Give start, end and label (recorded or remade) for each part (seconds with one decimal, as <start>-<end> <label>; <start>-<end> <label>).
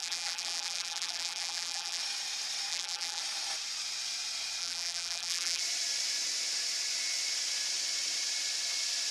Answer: 0.0-2.0 remade; 2.0-2.7 recorded; 2.7-3.2 remade; 3.2-4.6 recorded; 4.6-5.6 remade; 5.6-9.1 recorded